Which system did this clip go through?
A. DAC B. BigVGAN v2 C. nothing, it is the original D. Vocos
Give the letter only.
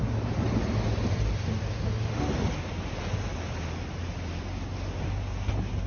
C